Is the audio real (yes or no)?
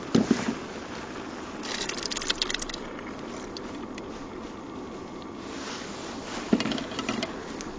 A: yes